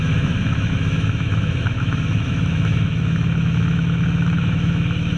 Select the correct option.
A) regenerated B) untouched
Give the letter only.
A